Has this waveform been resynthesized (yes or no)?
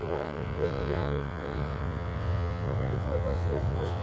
yes